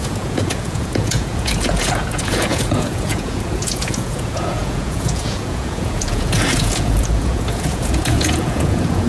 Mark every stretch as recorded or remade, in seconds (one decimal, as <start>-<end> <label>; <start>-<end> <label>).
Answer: 0.0-9.1 remade